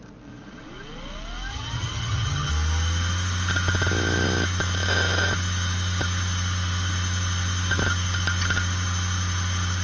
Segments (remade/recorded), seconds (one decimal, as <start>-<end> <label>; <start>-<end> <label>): 0.0-1.5 recorded; 1.5-2.5 remade; 2.5-9.8 recorded